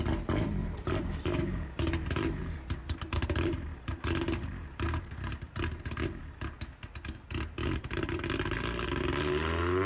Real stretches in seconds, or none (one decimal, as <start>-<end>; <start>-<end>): 0.0-0.6; 5.8-7.6; 8.2-9.9